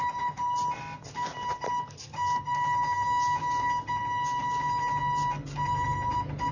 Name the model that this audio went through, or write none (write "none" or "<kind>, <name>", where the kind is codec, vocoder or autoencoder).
none